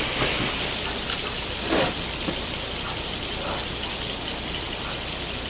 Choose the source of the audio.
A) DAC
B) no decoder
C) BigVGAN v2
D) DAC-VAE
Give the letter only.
B